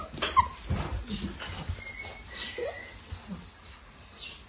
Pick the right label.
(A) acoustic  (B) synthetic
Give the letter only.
A